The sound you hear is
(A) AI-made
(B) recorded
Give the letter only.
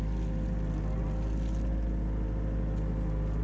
B